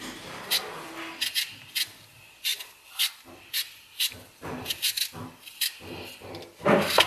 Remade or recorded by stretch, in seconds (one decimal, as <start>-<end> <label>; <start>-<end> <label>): 0.0-7.1 recorded